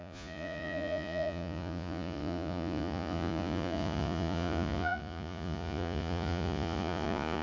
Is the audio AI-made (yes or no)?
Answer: yes